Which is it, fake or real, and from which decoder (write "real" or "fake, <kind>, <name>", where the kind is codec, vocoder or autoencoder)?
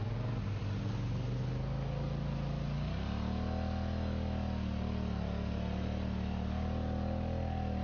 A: real